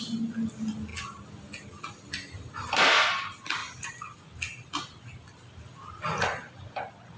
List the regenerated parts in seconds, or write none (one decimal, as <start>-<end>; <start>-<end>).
none